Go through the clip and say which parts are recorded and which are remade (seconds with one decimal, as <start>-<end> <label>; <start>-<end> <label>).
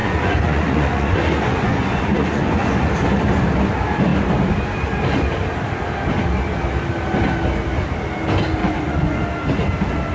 0.0-2.9 remade; 2.9-8.6 recorded; 8.6-9.2 remade; 9.2-10.1 recorded